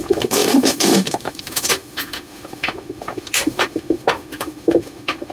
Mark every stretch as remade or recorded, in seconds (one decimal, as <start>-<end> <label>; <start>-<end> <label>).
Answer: 0.0-5.3 remade